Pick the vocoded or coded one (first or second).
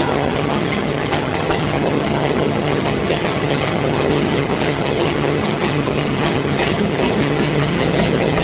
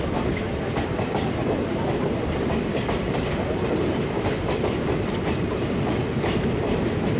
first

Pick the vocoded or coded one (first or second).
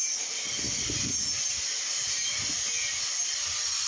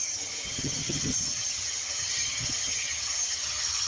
second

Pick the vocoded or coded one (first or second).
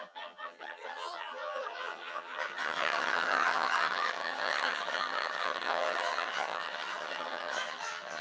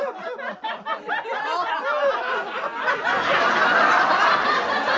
first